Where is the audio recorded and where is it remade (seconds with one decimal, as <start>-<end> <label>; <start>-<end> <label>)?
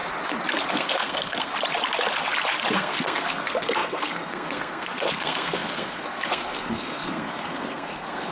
0.0-0.7 recorded; 0.7-1.5 remade; 1.5-2.7 recorded; 2.7-8.3 remade